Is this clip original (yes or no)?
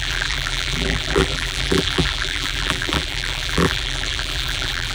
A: no